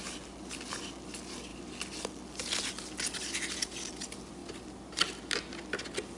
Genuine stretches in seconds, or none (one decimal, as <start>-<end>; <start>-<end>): 0.0-6.2